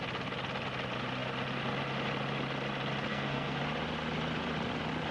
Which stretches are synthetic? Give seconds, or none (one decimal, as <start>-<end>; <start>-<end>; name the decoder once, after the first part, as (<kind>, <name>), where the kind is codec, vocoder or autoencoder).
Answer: 3.1-3.6 (codec, SNAC)